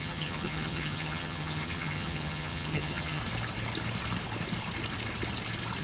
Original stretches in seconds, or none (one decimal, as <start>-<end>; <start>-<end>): 3.2-5.8